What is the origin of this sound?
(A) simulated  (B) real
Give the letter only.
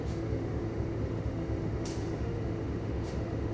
A